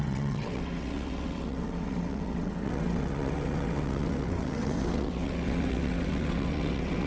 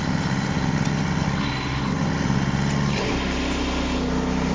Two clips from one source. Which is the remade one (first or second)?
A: first